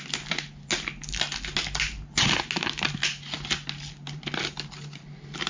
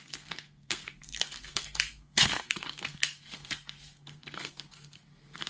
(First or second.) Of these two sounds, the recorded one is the first